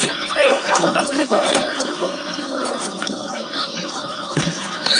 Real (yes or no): no